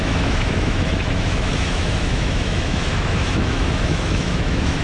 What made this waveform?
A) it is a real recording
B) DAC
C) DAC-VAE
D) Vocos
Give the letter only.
C